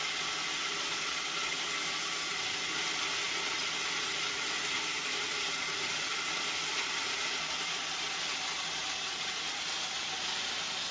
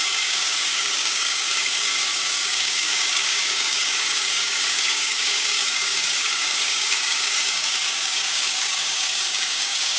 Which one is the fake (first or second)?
second